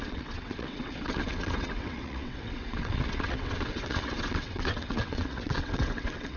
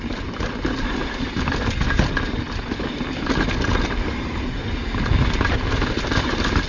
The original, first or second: second